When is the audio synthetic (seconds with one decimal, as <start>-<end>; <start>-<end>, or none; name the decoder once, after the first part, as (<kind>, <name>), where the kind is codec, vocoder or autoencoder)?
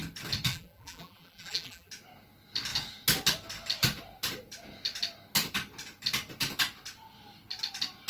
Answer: 0.5-1.9 (vocoder, BigVGAN v2)